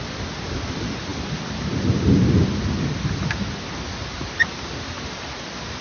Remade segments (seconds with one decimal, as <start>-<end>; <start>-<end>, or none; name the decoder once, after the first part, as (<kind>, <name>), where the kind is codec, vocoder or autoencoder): none